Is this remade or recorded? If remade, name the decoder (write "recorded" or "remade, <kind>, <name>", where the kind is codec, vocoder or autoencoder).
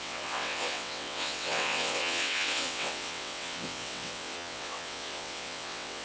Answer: remade, vocoder, WaveNeXt